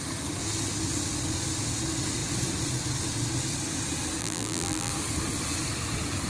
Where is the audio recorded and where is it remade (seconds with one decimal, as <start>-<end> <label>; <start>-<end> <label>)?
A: 0.0-4.2 recorded; 4.2-4.9 remade; 4.9-6.3 recorded